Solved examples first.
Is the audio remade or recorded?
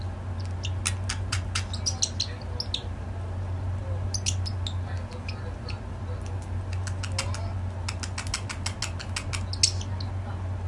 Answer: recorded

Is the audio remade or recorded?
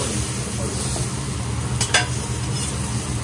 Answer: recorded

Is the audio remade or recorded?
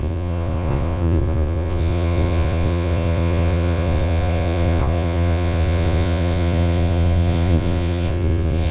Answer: remade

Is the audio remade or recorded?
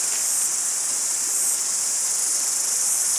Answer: recorded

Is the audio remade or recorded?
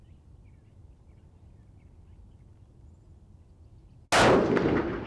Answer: recorded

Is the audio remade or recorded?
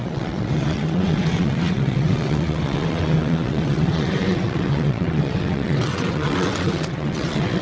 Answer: remade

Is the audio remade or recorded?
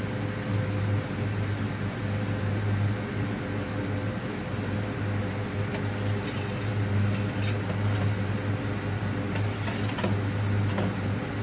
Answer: recorded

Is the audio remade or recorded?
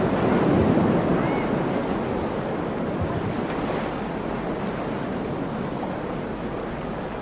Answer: recorded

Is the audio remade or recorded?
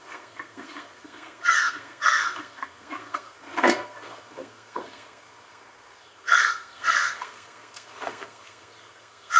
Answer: remade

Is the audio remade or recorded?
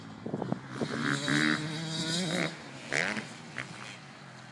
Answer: recorded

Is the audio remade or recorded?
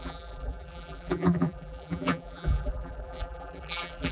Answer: remade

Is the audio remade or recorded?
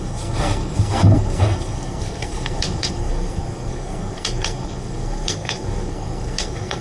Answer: remade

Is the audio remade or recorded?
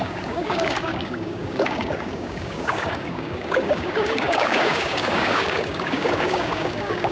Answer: remade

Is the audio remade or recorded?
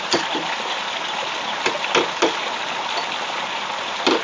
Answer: recorded